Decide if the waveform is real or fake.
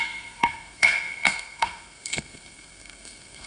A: fake